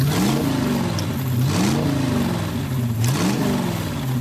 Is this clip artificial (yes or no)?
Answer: no